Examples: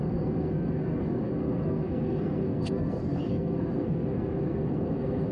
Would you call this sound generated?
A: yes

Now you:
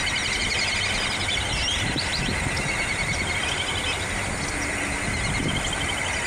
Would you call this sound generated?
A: no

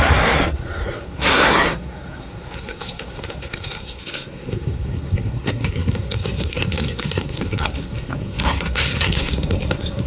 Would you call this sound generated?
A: yes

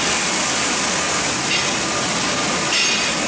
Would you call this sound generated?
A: no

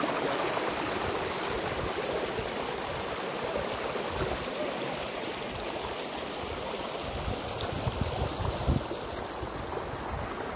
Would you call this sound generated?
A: no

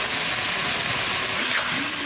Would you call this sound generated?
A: no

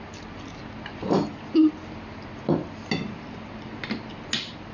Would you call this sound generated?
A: no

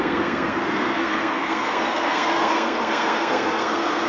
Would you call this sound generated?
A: yes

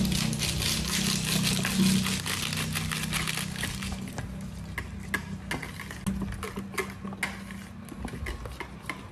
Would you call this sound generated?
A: no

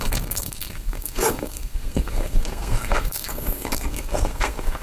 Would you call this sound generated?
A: yes